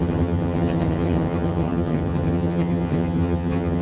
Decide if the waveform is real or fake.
fake